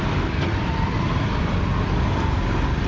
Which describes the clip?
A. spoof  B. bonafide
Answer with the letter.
B